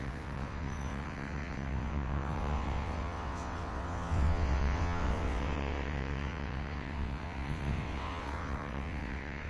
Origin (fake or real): fake